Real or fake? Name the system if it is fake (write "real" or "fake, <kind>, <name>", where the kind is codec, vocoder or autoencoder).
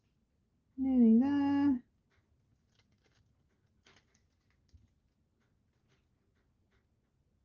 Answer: real